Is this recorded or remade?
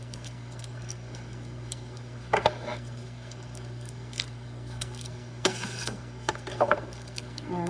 remade